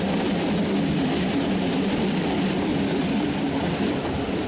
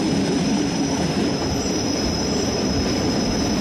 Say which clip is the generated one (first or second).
second